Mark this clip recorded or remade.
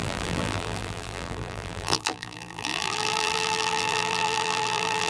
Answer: remade